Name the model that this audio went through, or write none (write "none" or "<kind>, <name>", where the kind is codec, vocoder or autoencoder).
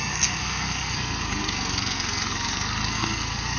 codec, SNAC